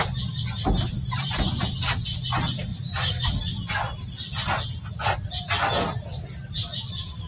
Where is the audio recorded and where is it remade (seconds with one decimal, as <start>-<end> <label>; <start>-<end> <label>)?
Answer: 0.0-7.3 recorded